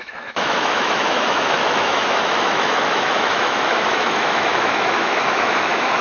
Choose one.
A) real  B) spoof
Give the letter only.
B